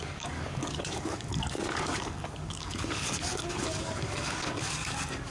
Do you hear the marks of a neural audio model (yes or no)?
yes